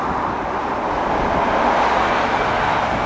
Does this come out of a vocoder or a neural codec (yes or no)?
no